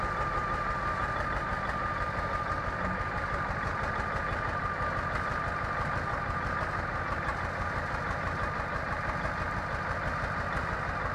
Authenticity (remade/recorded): recorded